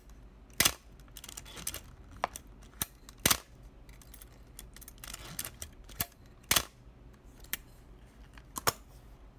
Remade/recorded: recorded